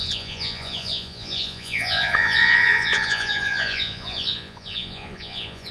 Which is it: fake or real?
fake